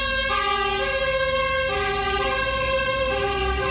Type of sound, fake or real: real